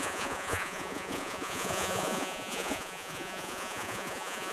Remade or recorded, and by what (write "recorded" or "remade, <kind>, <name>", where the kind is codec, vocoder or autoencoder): remade, vocoder, Vocos